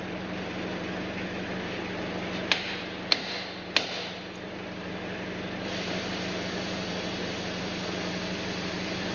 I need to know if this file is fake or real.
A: real